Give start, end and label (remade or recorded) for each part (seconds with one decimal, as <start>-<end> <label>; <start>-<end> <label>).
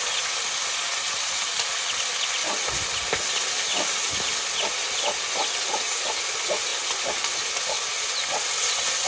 0.0-9.1 recorded